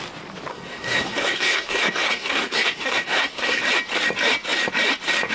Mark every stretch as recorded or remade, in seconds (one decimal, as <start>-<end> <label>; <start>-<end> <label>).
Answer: 0.0-0.5 recorded; 0.5-3.6 remade; 3.6-5.3 recorded